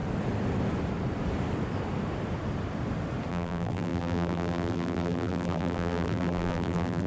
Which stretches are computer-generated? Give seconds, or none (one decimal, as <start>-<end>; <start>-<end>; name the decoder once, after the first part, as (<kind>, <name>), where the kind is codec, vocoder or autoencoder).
3.3-7.1 (vocoder, BigVGAN v2)